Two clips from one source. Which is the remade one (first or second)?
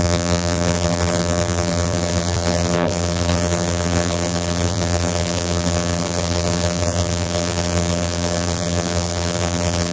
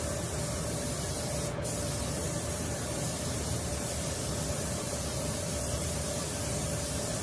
first